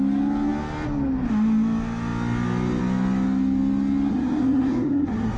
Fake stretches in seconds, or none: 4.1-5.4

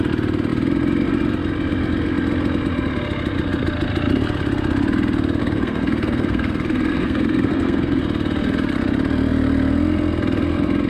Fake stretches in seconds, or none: 5.4-8.0

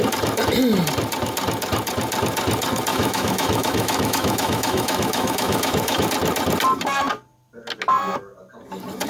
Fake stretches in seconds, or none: 2.9-6.1

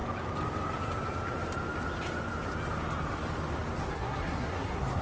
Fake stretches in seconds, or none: 3.9-5.0